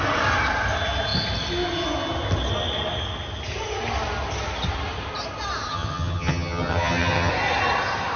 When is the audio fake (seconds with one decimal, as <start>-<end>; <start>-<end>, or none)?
5.7-7.3